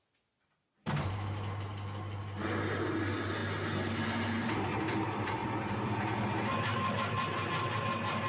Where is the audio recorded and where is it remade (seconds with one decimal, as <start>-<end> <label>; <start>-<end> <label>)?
0.0-3.4 recorded; 3.4-3.9 remade; 3.9-5.4 recorded; 5.4-6.2 remade; 6.2-8.3 recorded